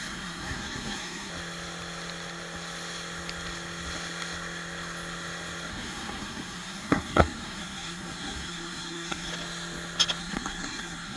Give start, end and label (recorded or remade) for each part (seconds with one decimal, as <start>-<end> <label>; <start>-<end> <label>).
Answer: 0.0-1.3 remade; 1.3-5.7 recorded; 5.7-9.3 remade; 9.3-10.2 recorded; 10.2-11.2 remade